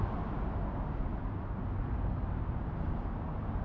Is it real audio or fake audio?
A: real